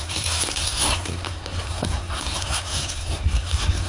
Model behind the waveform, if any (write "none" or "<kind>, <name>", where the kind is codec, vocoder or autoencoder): codec, SNAC